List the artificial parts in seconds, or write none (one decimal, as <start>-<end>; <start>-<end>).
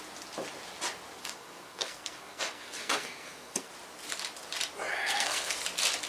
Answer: 1.2-3.7; 4.9-5.6